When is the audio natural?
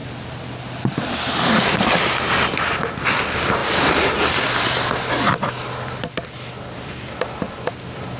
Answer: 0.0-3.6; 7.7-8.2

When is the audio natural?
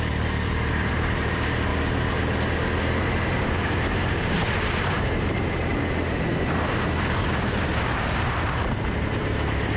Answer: 1.7-3.0; 5.7-6.8